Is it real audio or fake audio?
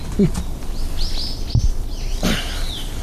real